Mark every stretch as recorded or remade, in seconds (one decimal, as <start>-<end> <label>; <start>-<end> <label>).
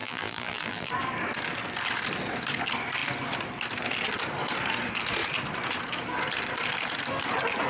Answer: 0.0-0.9 remade; 0.9-7.7 recorded